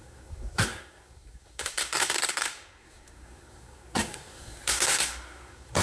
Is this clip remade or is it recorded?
remade